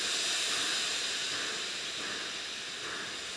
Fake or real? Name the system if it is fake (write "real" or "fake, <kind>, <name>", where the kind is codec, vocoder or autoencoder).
real